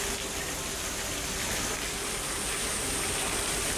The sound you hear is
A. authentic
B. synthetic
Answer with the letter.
A